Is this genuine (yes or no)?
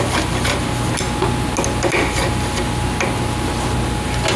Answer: yes